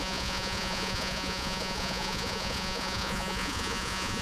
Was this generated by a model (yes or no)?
yes